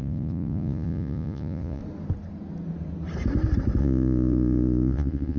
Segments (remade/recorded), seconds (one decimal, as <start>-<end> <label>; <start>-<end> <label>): 0.0-1.8 remade; 1.8-3.8 recorded; 3.8-5.4 remade